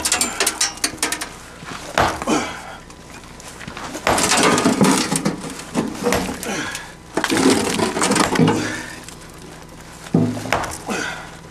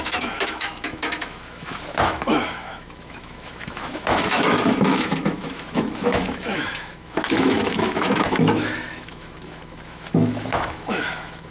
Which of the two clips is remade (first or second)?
second